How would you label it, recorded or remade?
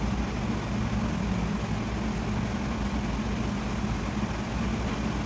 recorded